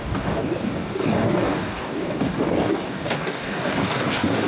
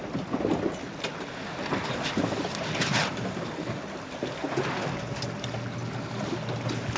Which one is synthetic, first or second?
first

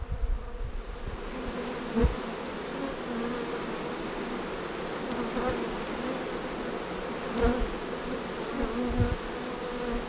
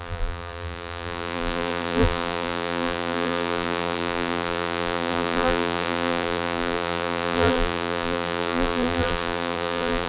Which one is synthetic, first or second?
second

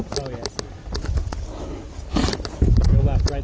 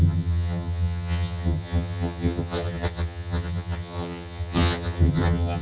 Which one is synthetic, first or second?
second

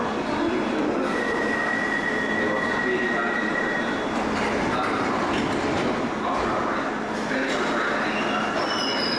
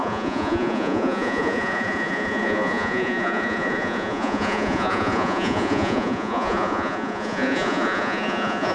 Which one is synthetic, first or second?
second